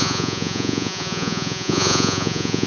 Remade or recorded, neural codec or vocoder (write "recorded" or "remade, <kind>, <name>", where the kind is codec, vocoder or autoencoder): remade, vocoder, Vocos